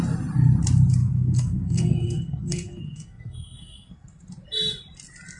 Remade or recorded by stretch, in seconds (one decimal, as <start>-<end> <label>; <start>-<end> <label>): 0.0-1.0 recorded; 1.0-4.2 remade; 4.2-5.4 recorded